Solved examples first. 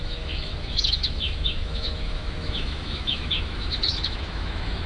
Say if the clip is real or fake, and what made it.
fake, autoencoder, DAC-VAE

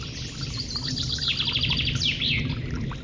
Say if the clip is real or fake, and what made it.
real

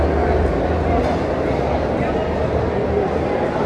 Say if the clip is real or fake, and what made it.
real